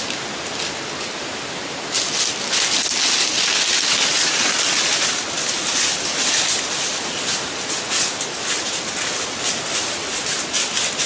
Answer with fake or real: real